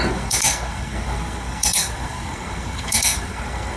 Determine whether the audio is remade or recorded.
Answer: remade